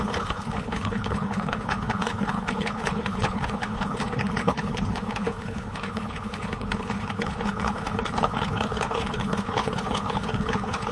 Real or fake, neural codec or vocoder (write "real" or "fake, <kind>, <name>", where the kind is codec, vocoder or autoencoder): fake, codec, HILCodec